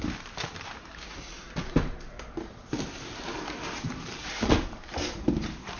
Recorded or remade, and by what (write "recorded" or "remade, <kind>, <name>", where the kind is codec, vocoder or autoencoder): remade, vocoder, BigVGAN v2